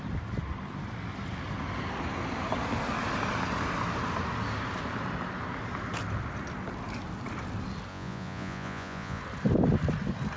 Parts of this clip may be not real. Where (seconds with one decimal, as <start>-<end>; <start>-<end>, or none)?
7.9-9.2